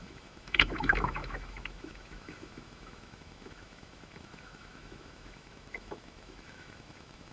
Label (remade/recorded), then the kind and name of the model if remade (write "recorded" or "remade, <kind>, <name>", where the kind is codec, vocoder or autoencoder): remade, autoencoder, DAC-VAE